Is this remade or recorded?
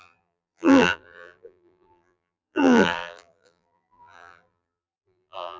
remade